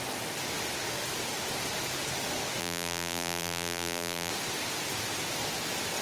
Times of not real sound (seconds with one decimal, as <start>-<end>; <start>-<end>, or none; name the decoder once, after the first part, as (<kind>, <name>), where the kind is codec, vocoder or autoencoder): 2.6-4.3 (vocoder, BigVGAN v2)